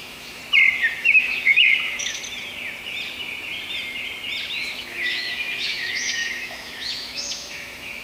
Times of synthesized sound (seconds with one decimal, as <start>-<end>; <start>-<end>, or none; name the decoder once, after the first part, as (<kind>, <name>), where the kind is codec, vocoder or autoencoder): 0.0-0.4 (autoencoder, DAC-VAE); 1.0-2.2; 4.6-8.0

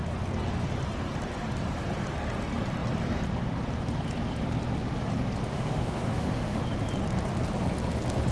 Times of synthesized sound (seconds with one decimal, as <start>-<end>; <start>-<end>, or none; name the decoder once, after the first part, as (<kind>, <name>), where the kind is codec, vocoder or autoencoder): 5.5-6.6 (autoencoder, DAC-VAE)